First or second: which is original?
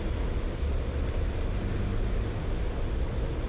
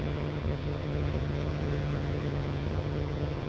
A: first